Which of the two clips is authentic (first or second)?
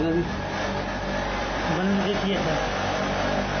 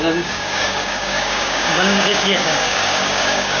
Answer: first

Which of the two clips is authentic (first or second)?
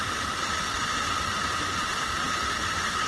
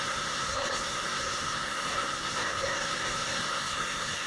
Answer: first